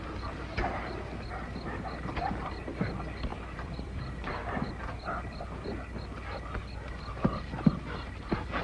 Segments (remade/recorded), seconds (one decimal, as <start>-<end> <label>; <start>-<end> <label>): 0.0-3.3 recorded; 3.3-4.2 remade; 4.2-8.6 recorded